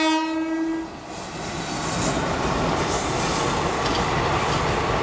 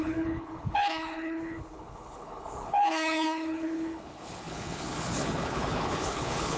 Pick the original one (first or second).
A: first